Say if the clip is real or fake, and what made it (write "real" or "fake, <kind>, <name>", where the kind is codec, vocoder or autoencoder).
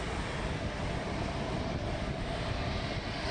fake, vocoder, BigVGAN v2